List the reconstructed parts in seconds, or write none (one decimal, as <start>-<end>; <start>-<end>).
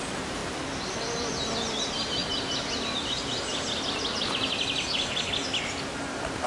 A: 0.0-0.4; 1.8-2.2; 6.1-6.5